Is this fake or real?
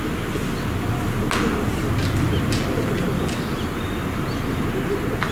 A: real